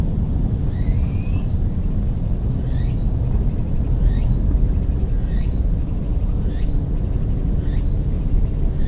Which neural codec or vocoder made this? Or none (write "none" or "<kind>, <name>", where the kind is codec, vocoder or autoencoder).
none